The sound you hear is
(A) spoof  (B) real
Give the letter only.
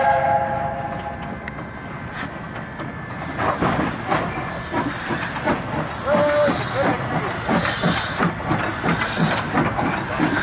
B